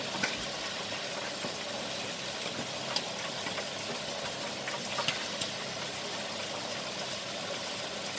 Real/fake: real